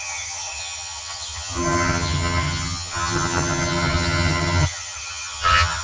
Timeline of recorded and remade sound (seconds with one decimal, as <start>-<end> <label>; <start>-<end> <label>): 0.0-5.8 remade